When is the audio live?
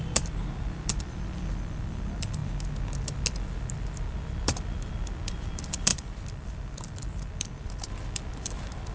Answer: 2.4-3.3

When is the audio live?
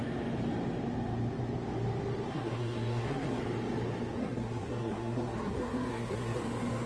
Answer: 0.0-2.3; 3.4-4.2; 6.4-6.9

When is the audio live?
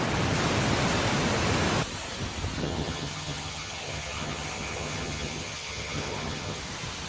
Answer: 0.0-2.6; 6.6-7.1